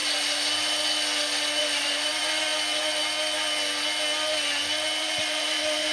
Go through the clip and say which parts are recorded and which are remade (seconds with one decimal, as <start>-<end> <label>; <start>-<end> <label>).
0.0-1.6 recorded; 1.6-2.5 remade; 2.5-5.0 recorded; 5.0-5.9 remade